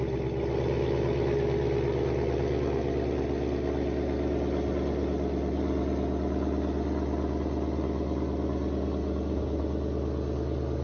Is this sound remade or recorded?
recorded